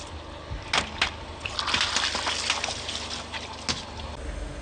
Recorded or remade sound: recorded